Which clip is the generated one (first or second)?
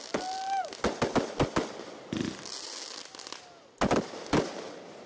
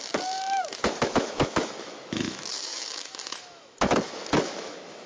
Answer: second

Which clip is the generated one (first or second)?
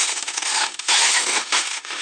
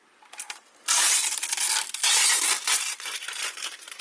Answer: first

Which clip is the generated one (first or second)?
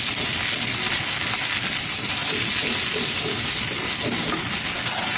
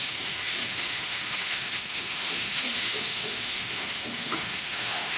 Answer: second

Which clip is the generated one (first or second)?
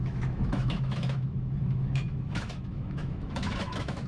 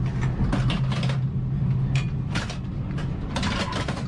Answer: first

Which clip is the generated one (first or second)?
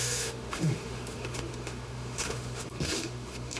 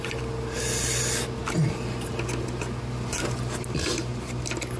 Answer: first